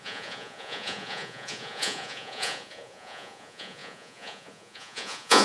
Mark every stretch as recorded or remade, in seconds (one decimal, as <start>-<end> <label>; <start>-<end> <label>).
0.0-5.4 remade